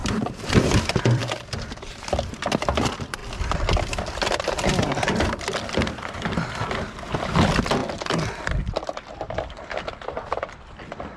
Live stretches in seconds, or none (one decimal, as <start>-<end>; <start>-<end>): 3.2-4.8; 7.8-9.1

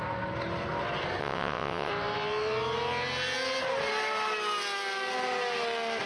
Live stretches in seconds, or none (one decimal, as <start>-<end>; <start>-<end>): 0.0-1.2; 1.9-6.1